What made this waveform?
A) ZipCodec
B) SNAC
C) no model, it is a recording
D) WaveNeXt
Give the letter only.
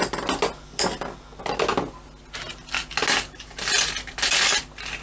C